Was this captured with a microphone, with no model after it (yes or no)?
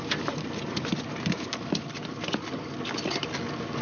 yes